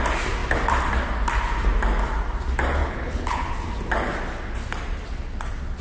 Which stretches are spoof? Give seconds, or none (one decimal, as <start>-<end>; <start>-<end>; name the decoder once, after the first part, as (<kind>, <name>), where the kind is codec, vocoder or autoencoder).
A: 2.8-3.5 (codec, HILCodec)